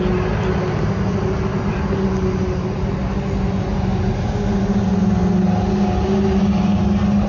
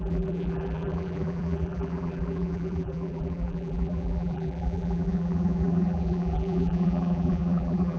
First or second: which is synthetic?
second